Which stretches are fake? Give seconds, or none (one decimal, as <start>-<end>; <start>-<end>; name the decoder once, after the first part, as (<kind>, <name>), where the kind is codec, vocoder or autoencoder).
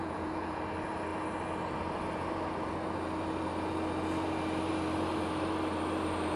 0.0-0.6 (vocoder, Vocos)